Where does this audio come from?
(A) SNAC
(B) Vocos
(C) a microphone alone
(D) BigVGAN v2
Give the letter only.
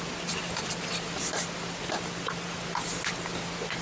C